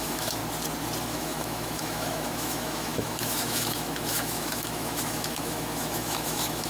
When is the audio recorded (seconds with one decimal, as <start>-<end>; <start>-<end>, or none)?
0.4-1.0